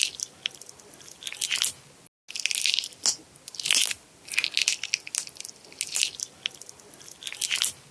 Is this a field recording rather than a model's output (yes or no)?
yes